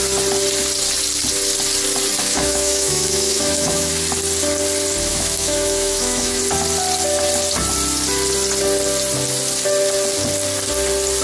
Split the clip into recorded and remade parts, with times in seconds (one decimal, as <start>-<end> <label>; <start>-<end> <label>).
0.0-2.2 recorded; 2.2-3.9 remade; 3.9-5.1 recorded; 5.1-6.4 remade; 6.4-11.2 recorded